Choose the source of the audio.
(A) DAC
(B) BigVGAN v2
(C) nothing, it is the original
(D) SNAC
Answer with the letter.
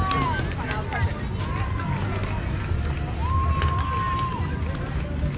C